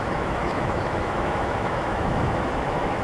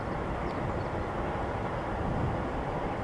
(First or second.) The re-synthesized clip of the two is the first